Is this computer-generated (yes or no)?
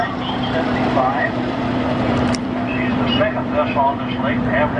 yes